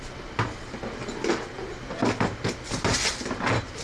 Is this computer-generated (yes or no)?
no